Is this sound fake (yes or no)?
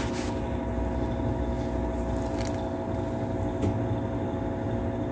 no